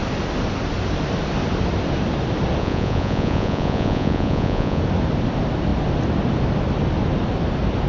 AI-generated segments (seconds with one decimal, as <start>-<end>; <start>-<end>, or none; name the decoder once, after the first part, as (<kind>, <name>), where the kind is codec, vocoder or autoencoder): 2.6-4.8 (vocoder, Vocos)